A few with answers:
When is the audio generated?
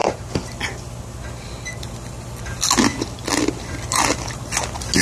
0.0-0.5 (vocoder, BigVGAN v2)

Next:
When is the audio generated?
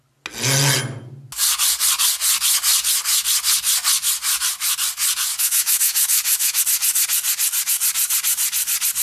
5.3-6.6 (autoencoder, DAC-VAE)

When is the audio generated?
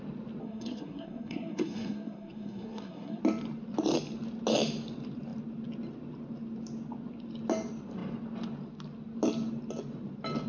0.4-3.2 (codec, SNAC)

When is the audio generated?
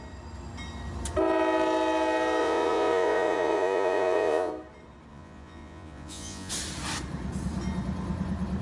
2.4-4.5 (vocoder, Vocos); 5.1-6.5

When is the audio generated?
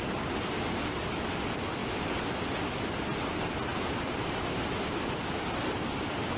none